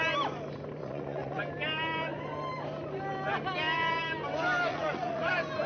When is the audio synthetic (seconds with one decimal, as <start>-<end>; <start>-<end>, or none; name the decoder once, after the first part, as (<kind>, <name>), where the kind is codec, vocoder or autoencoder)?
0.8-1.4 (vocoder, Vocos); 4.7-5.3